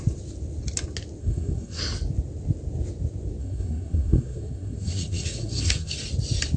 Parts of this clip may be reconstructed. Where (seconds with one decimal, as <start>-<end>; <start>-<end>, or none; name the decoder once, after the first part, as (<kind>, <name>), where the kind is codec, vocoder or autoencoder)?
1.2-1.8 (codec, SNAC); 3.4-5.9